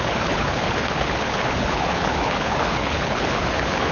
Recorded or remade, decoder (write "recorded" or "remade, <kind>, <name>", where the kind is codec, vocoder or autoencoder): remade, codec, HILCodec